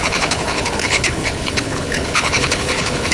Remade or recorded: remade